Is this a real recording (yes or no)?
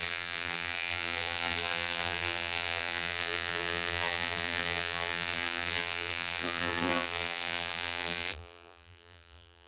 no